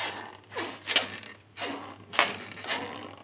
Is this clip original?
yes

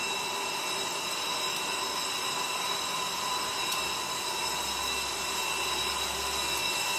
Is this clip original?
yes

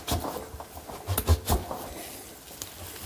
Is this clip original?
yes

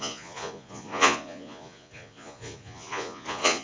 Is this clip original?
no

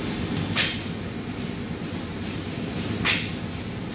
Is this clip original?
yes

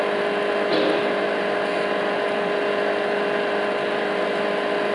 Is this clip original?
yes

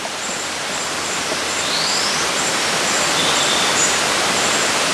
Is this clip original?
yes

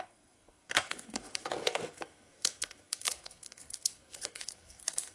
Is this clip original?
no